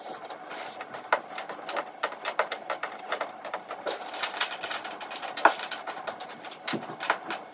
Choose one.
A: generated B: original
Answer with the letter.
B